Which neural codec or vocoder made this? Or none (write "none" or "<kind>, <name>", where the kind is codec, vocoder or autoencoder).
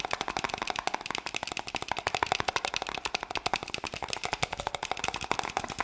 none